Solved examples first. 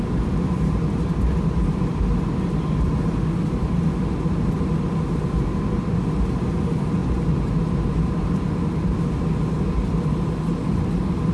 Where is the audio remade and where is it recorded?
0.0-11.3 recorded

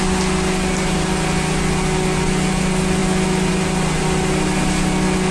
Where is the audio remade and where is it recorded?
0.0-5.3 recorded

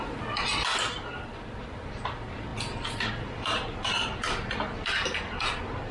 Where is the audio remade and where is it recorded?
0.0-5.9 remade

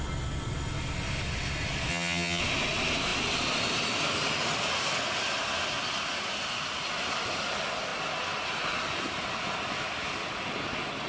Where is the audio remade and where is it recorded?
0.0-1.9 recorded; 1.9-2.4 remade; 2.4-11.1 recorded

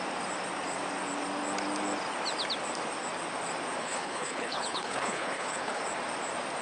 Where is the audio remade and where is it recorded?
0.0-3.8 recorded; 3.8-5.8 remade; 5.8-6.6 recorded

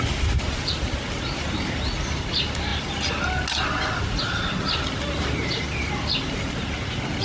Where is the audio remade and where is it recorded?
0.0-7.2 recorded

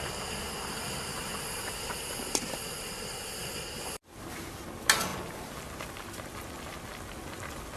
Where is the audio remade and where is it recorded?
0.0-7.8 recorded

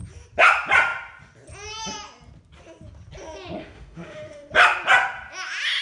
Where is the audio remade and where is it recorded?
0.0-3.6 recorded; 3.6-4.5 remade; 4.5-5.8 recorded